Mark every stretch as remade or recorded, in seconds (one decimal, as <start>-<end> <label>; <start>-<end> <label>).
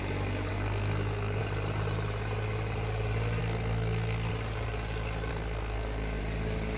0.0-0.5 recorded; 0.5-1.4 remade; 1.4-3.4 recorded; 3.4-4.3 remade; 4.3-5.3 recorded; 5.3-6.2 remade; 6.2-6.8 recorded